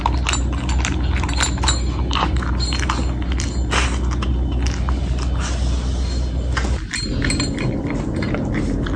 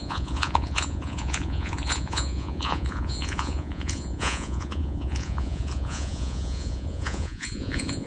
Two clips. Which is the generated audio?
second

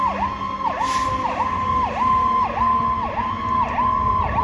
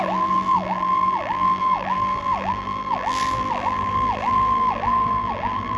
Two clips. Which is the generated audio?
second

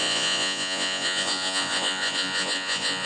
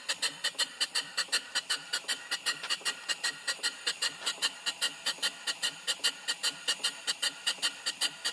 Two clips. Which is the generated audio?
first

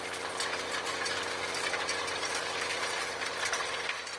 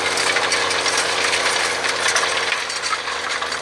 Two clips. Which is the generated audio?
first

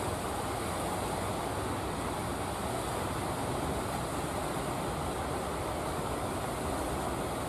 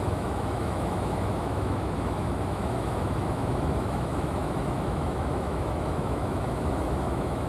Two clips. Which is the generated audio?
second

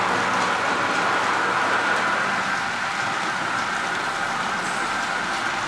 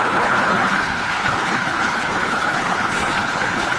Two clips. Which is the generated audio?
second